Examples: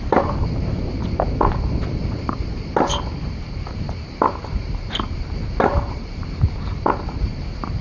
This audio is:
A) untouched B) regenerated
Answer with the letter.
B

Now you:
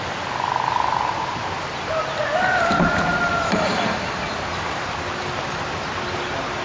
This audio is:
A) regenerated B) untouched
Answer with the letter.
B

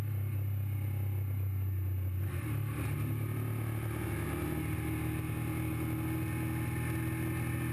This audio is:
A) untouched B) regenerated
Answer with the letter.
A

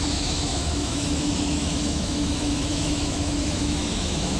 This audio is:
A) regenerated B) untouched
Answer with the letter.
A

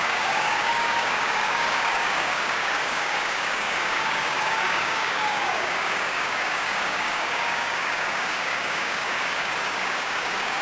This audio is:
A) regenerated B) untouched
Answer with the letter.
A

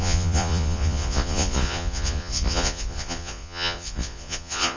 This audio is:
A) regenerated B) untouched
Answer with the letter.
A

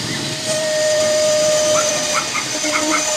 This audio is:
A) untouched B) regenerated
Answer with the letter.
B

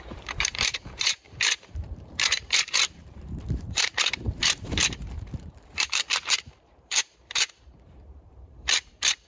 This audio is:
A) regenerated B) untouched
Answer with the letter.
A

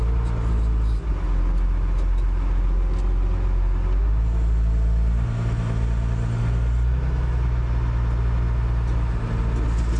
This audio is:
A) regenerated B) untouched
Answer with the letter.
B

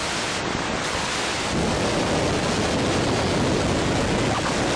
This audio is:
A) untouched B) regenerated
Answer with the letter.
A